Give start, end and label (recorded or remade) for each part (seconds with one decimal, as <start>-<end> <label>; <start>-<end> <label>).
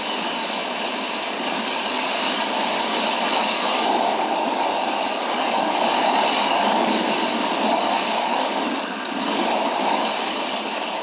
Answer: 0.0-0.6 remade; 0.6-1.2 recorded; 1.2-11.0 remade